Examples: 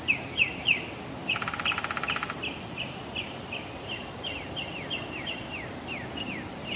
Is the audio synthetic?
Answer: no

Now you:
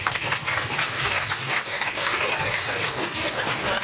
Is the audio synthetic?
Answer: yes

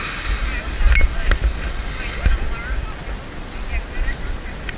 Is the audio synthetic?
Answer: no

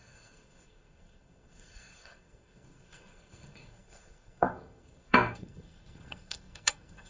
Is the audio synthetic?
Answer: yes